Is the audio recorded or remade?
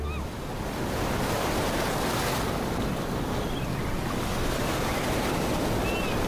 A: recorded